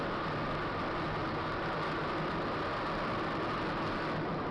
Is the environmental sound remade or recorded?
recorded